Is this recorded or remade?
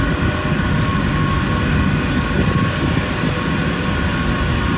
recorded